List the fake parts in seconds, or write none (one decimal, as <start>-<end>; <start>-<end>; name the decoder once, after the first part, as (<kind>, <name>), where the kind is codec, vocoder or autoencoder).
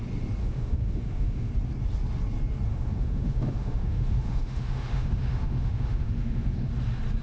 0.4-1.5 (autoencoder, DAC-VAE); 2.7-6.7